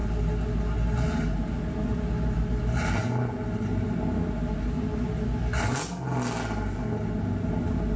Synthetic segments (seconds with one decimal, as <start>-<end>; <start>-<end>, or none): none